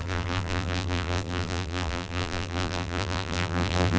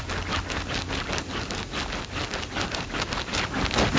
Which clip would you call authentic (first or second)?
second